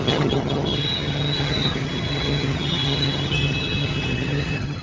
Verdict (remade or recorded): remade